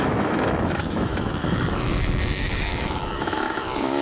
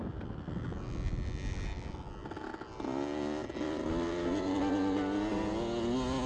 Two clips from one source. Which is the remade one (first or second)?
first